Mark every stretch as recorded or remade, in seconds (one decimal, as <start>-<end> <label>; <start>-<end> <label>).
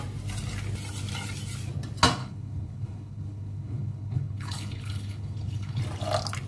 0.0-2.2 recorded; 2.2-5.8 remade; 5.8-6.5 recorded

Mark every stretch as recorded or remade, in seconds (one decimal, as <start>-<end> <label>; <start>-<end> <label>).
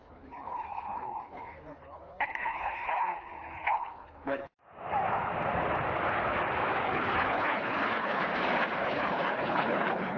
0.0-4.4 remade; 4.4-6.8 recorded; 6.8-8.2 remade; 8.2-8.8 recorded; 8.8-10.2 remade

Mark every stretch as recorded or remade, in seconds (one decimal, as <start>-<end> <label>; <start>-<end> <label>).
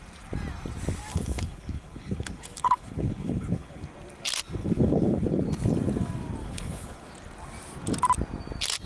0.0-1.1 recorded; 1.1-3.8 remade; 3.8-4.6 recorded; 4.6-5.5 remade; 5.5-6.4 recorded; 6.4-7.1 remade; 7.1-8.9 recorded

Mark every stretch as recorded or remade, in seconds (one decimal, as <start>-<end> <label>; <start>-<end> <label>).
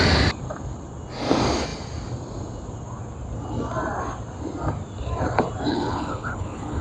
0.0-5.7 recorded; 5.7-6.8 remade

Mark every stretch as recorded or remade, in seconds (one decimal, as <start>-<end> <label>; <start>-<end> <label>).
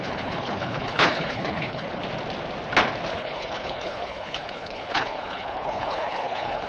0.0-2.0 remade; 2.0-3.1 recorded; 3.1-6.7 remade